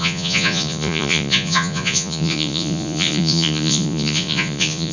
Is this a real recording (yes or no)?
no